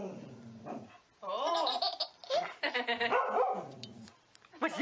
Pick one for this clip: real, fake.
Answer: fake